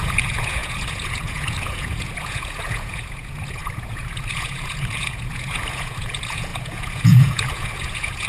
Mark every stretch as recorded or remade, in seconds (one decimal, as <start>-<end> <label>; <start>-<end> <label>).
0.0-8.3 remade